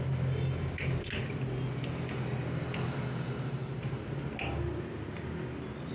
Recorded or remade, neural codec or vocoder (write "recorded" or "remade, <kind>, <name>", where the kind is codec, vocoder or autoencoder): recorded